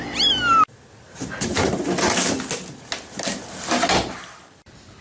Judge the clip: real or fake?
real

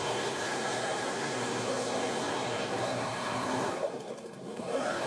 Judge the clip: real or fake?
fake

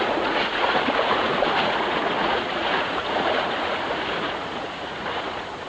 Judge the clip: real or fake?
fake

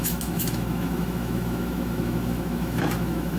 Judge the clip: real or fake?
fake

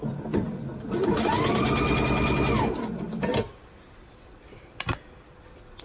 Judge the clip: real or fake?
real